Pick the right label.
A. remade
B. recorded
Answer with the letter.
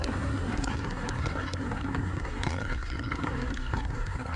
A